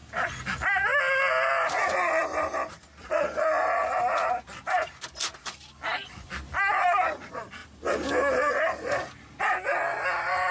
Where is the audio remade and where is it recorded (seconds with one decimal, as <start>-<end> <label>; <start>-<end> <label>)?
0.0-10.5 recorded